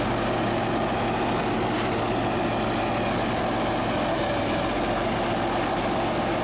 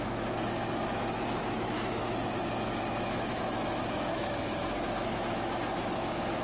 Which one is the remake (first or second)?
second